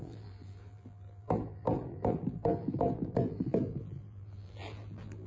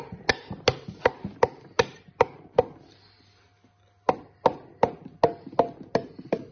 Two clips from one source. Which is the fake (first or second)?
first